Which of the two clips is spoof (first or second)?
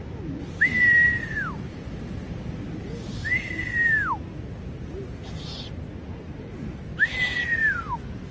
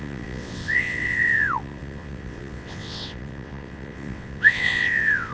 second